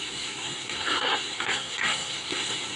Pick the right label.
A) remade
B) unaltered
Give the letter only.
A